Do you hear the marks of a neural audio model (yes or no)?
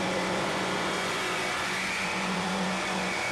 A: yes